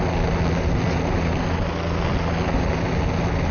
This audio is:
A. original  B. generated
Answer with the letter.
A